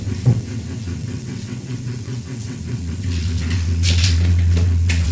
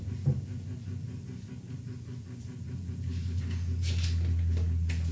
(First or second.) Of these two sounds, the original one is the second